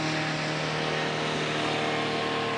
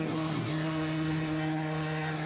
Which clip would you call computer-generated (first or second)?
second